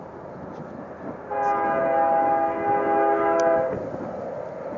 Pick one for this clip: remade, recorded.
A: recorded